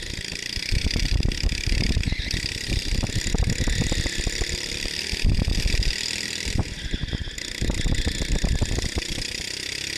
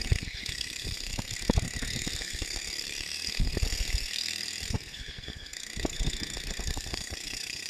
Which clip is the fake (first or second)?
second